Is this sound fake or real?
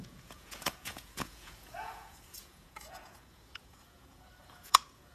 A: fake